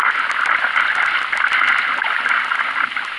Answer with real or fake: real